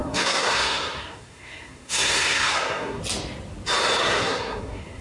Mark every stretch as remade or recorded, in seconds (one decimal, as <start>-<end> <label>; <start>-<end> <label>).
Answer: 0.0-3.0 remade; 3.0-4.0 recorded; 4.0-5.0 remade